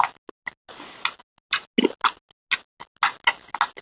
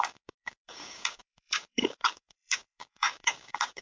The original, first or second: first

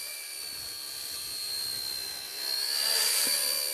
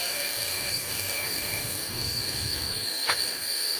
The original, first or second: first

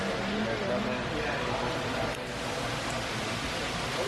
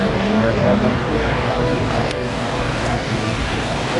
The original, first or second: first